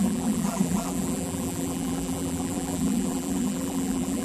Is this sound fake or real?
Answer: fake